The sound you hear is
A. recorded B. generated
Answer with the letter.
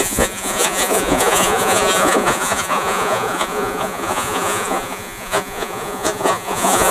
B